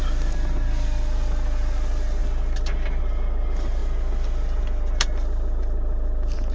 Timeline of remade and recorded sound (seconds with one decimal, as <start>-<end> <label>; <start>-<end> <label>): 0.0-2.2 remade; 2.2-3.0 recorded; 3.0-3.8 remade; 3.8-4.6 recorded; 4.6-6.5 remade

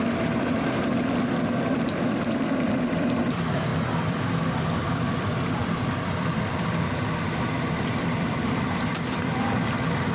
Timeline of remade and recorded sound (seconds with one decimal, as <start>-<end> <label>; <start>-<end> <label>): 0.0-10.1 remade

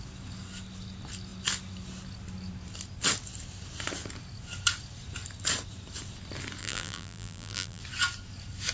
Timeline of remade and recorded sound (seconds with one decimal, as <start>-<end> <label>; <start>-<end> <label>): 0.0-6.6 recorded; 6.6-7.8 remade; 7.8-8.7 recorded